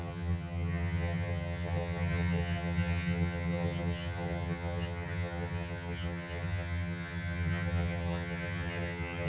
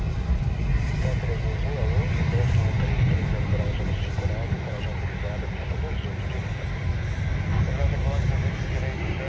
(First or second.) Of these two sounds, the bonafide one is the second